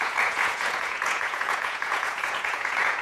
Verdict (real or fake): fake